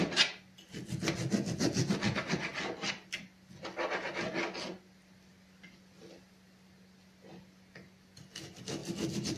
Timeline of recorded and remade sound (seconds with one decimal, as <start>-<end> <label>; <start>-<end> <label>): 0.0-9.4 recorded